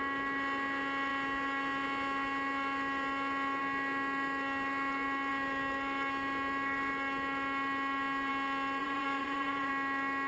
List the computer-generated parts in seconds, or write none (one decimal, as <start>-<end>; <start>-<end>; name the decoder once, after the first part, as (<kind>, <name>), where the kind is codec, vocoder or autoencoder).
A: 8.8-9.7 (vocoder, Vocos)